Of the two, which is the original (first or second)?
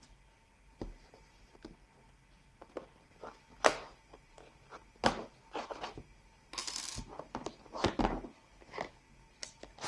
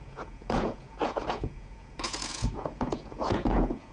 first